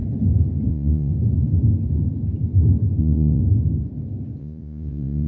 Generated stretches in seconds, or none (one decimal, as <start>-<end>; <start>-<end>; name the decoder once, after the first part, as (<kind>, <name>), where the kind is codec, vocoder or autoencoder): 0.7-1.1 (vocoder, Vocos); 3.0-3.4; 4.4-5.3